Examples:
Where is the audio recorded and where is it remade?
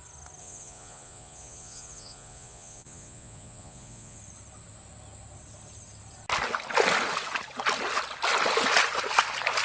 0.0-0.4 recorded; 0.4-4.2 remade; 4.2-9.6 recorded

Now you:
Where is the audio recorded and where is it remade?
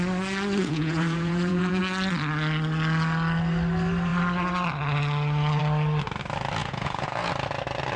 0.0-0.6 recorded; 0.6-1.8 remade; 1.8-6.6 recorded; 6.6-7.3 remade; 7.3-8.0 recorded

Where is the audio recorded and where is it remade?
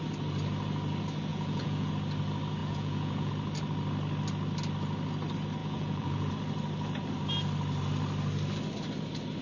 0.0-1.3 recorded; 1.3-1.9 remade; 1.9-2.6 recorded; 2.6-3.3 remade; 3.3-5.6 recorded; 5.6-6.3 remade; 6.3-9.4 recorded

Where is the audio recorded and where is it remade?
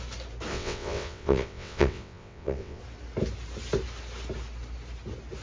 0.0-0.5 recorded; 0.5-2.8 remade; 2.8-5.4 recorded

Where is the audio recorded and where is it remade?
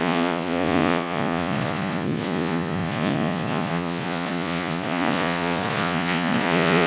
0.0-6.9 remade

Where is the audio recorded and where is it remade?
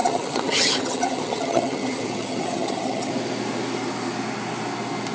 0.0-3.1 remade; 3.1-5.1 recorded